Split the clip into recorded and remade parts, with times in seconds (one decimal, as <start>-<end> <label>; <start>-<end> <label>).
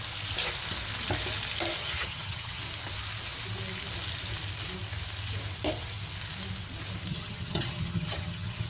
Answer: 0.0-1.8 recorded; 1.8-2.6 remade; 2.6-7.1 recorded; 7.1-8.7 remade